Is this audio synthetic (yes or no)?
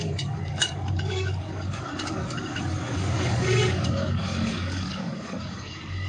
yes